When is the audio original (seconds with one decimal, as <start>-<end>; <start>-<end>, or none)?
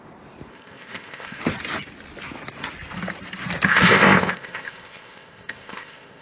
0.0-0.5; 1.4-3.7